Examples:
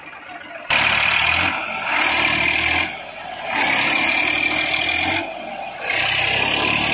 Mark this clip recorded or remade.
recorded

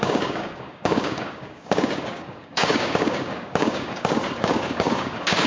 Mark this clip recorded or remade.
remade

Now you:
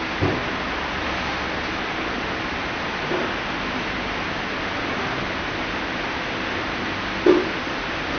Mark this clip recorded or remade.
recorded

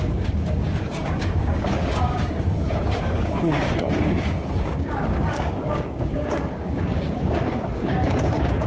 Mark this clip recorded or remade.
remade